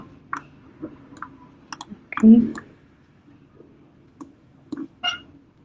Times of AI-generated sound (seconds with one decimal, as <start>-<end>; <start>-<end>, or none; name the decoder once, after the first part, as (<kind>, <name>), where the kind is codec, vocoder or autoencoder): 2.5-3.3 (autoencoder, DAC-VAE); 4.0-5.0